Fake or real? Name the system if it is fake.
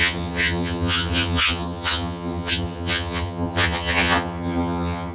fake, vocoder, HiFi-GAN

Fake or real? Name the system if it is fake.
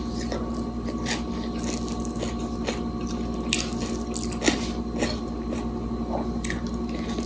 real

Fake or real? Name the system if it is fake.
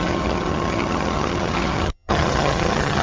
fake, vocoder, HiFi-GAN